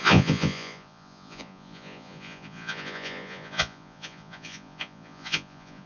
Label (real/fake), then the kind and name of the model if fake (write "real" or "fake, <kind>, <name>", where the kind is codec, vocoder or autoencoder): fake, vocoder, Vocos